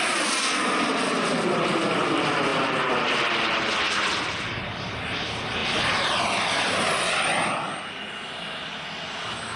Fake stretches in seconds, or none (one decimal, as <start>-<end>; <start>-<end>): none